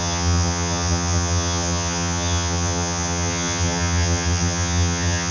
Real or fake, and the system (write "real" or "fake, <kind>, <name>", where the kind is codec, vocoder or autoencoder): fake, vocoder, HiFi-GAN